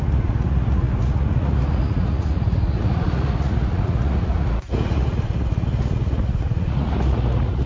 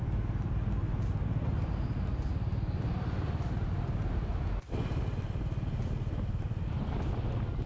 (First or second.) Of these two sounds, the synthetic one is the first